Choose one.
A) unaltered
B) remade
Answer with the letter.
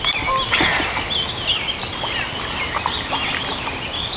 A